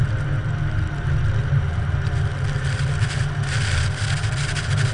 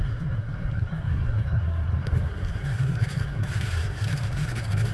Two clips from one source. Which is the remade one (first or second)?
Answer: second